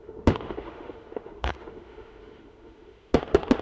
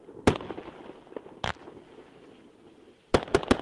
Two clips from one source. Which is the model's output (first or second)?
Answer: first